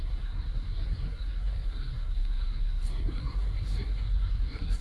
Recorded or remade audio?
remade